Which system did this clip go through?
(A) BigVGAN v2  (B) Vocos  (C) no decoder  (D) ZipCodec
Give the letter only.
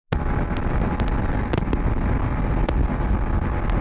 C